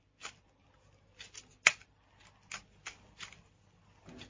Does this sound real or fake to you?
real